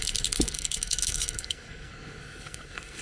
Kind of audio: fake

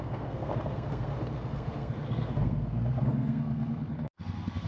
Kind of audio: fake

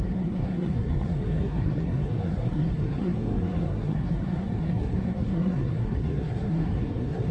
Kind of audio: fake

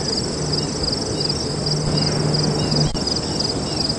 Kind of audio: real